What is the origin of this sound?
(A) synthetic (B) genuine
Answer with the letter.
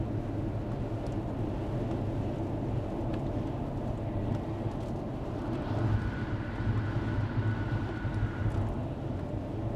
B